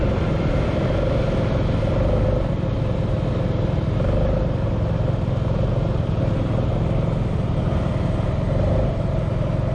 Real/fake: real